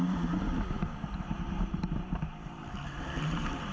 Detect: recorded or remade remade